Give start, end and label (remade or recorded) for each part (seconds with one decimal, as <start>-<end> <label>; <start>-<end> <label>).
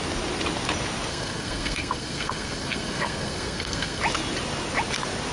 0.0-1.1 recorded; 1.1-4.0 remade; 4.0-5.3 recorded